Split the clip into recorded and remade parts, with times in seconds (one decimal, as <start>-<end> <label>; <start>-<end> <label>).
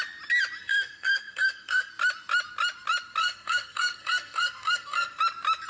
0.0-0.6 recorded; 0.6-1.9 remade; 1.9-3.2 recorded; 3.2-5.2 remade; 5.2-5.7 recorded